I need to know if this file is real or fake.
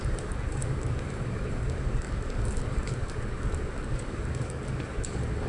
fake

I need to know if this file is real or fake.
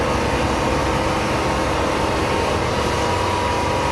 real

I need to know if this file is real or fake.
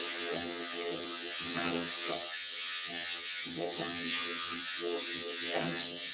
fake